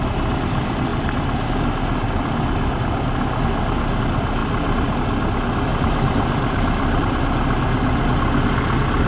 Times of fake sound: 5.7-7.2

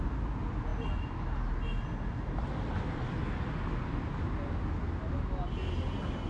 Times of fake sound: none

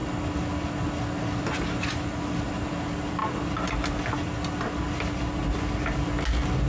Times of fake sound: none

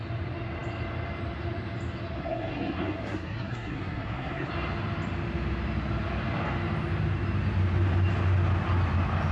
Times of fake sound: 2.2-4.5

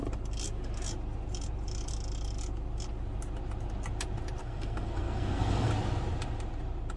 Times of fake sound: 4.4-5.7